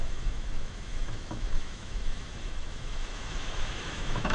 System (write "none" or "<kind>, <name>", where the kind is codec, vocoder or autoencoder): autoencoder, DAC-VAE